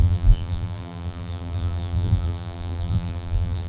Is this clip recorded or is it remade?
remade